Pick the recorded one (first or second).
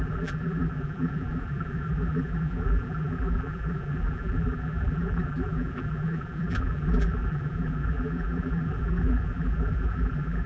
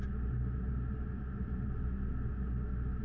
second